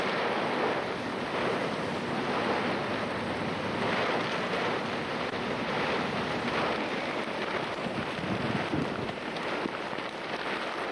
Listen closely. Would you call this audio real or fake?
real